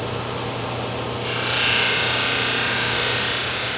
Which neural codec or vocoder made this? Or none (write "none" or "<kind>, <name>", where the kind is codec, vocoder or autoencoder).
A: none